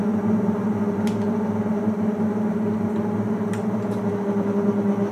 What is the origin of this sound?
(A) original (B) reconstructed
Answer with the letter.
A